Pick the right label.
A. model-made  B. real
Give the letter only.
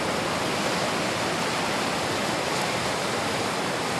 B